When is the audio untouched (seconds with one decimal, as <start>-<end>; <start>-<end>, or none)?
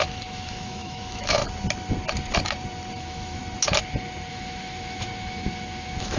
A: 1.4-2.9; 3.4-4.3